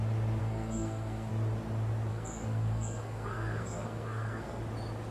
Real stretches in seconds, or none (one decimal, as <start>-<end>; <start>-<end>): 0.0-0.4; 1.3-2.1; 4.6-5.1